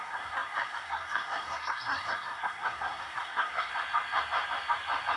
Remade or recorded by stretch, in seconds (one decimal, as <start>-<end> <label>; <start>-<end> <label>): 0.0-3.7 remade; 3.7-5.2 recorded